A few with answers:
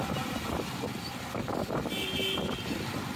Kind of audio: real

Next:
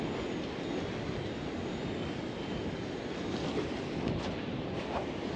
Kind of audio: real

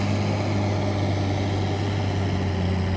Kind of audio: real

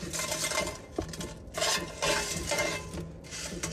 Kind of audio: real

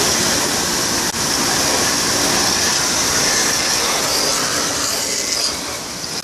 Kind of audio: real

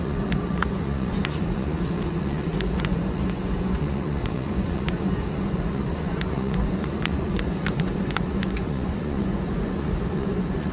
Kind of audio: fake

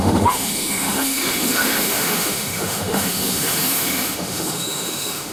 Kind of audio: fake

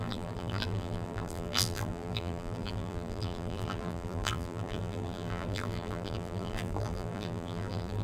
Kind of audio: fake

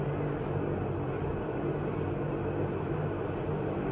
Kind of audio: real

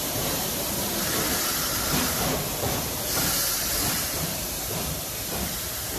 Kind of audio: fake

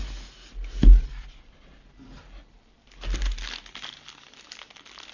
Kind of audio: real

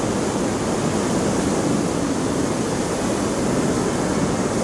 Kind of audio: real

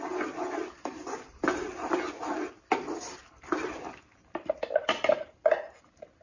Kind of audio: real